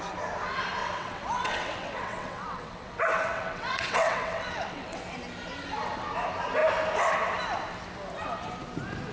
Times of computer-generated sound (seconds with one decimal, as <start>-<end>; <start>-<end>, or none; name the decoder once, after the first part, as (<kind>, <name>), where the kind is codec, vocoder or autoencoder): 0.8-5.0 (vocoder, WaveNeXt)